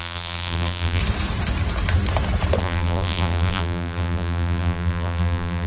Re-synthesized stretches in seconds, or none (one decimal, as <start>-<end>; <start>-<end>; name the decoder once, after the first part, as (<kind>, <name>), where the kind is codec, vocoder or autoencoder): 0.0-1.0 (vocoder, BigVGAN v2); 2.6-5.7